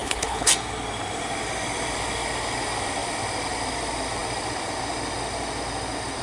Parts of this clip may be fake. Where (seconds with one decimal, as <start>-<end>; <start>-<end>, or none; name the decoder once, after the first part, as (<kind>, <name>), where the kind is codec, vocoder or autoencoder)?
0.0-0.5 (codec, HILCodec)